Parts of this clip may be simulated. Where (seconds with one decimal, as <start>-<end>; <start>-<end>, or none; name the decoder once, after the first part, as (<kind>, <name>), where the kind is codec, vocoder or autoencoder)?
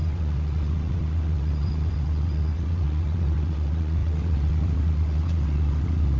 0.0-6.2 (vocoder, WaveNeXt)